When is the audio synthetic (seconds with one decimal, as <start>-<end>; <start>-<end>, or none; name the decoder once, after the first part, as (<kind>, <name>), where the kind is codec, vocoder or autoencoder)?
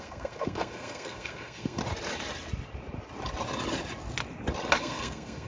0.0-1.8 (codec, SNAC); 4.8-5.5